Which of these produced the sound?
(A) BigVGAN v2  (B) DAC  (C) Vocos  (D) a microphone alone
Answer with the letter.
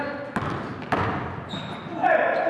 D